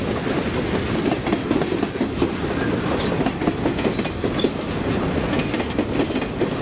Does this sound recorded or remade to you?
recorded